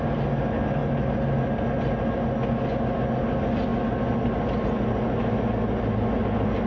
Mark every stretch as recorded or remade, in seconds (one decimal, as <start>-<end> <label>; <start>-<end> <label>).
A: 0.0-0.8 recorded; 0.8-1.6 remade; 1.6-6.7 recorded